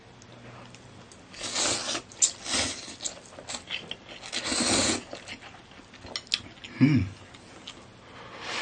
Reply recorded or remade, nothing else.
recorded